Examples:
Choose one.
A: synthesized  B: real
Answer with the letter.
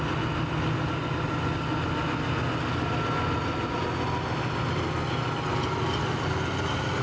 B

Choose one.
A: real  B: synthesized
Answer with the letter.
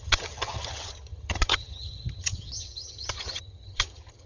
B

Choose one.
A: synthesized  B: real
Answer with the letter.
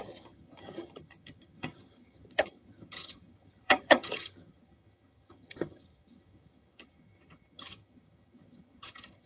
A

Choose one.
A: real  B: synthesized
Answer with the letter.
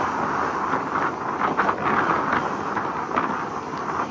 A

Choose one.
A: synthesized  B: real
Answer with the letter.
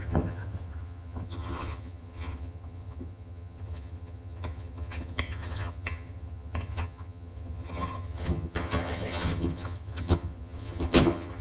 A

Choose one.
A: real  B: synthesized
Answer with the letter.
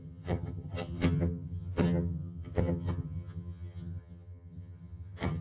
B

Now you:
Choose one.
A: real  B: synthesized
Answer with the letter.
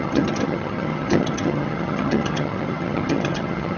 B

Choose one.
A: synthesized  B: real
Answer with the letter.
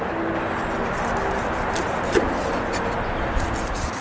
B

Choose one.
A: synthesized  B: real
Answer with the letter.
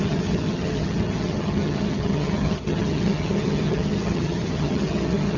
A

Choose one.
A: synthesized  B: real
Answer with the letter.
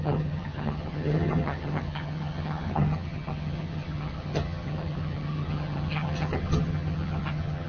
A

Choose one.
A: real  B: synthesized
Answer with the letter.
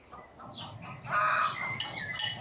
A